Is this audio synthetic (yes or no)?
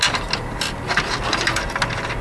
no